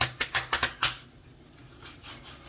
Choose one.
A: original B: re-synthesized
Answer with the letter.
A